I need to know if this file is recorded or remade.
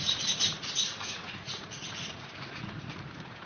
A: remade